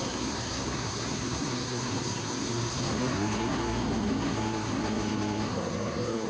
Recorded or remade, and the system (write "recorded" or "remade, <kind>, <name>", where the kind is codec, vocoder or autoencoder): remade, codec, SNAC